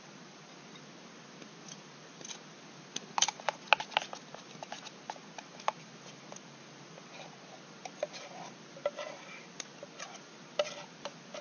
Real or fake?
real